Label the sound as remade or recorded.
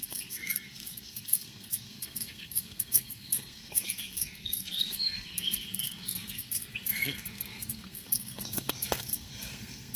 remade